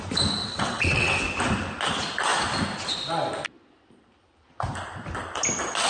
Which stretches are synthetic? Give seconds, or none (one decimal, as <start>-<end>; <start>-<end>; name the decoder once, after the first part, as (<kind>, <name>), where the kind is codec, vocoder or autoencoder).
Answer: 0.4-1.2 (vocoder, WaveNeXt)